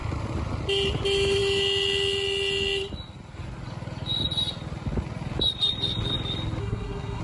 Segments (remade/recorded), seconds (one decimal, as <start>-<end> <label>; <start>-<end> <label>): 0.0-6.6 recorded; 6.6-7.2 remade